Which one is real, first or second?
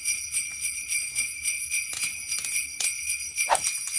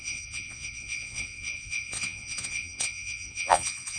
first